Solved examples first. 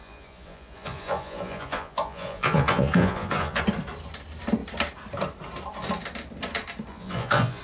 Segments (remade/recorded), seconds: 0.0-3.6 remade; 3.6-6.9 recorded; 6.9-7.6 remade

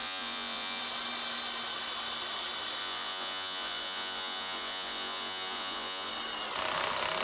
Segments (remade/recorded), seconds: 0.0-0.8 remade; 0.8-2.8 recorded; 2.8-6.1 remade; 6.1-7.2 recorded

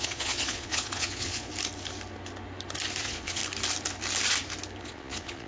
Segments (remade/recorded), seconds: 0.0-1.5 remade; 1.5-3.0 recorded; 3.0-3.4 remade; 3.4-4.8 recorded; 4.8-5.5 remade

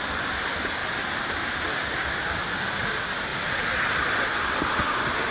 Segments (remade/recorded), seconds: 0.0-5.3 recorded

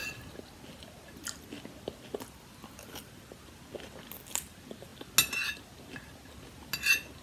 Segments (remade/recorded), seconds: 0.0-7.2 recorded

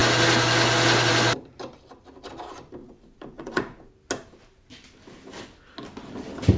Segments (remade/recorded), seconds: 0.0-2.8 recorded; 2.8-3.9 remade; 3.9-6.6 recorded

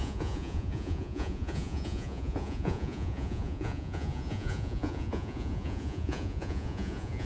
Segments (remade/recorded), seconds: 0.0-7.3 remade

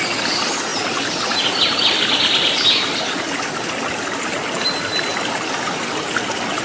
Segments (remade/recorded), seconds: 0.0-6.6 recorded